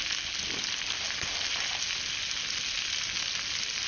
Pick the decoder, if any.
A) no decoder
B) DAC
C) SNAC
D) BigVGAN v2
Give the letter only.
A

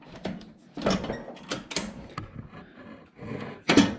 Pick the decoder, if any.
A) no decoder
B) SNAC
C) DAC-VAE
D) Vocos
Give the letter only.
A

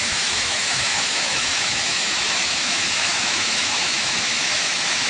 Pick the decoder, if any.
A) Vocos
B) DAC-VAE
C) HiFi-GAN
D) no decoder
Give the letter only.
B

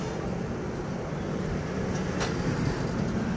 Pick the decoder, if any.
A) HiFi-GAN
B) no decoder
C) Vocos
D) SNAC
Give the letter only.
B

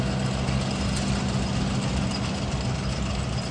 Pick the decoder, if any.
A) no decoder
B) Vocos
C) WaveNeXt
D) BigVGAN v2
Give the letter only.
A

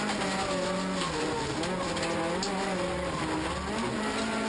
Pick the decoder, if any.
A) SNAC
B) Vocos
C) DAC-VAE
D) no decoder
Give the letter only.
D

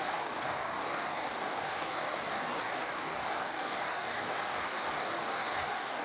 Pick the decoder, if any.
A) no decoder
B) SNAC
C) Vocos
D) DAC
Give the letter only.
D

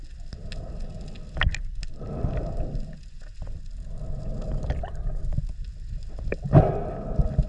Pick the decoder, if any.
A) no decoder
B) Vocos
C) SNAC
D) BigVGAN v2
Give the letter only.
A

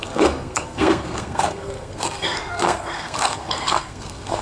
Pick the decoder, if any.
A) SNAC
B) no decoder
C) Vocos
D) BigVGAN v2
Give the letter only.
A